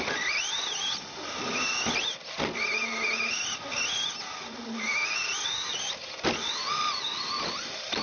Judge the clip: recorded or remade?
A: recorded